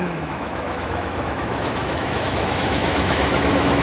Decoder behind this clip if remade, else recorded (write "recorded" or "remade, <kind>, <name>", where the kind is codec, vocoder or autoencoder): remade, autoencoder, DAC-VAE